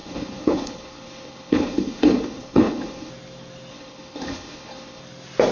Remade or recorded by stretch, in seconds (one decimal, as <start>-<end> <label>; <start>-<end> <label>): 0.0-3.1 remade; 3.1-3.7 recorded; 3.7-5.0 remade; 5.0-5.5 recorded